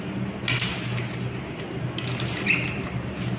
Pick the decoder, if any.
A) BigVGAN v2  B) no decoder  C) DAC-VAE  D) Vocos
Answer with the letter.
B